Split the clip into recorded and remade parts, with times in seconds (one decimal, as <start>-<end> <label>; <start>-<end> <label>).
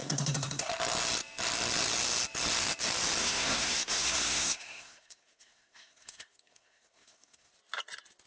0.0-0.7 remade; 0.7-3.2 recorded; 3.2-7.5 remade; 7.5-8.3 recorded